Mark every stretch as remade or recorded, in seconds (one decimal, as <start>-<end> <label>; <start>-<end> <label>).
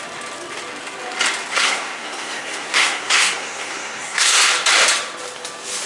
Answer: 0.0-1.5 recorded; 1.5-4.5 remade; 4.5-5.9 recorded